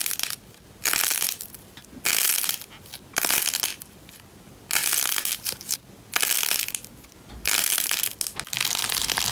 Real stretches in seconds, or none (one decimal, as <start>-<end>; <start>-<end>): 0.0-9.3